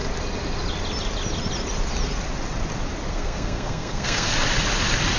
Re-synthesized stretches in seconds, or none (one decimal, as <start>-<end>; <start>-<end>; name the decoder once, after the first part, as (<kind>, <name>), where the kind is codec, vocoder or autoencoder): 3.1-4.3 (codec, SNAC)